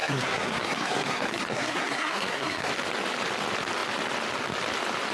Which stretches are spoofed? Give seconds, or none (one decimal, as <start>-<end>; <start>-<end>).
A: 0.0-2.7